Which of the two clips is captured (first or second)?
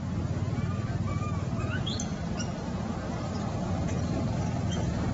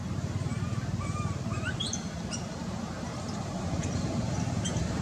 first